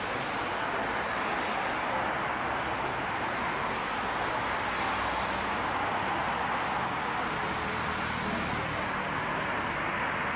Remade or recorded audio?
recorded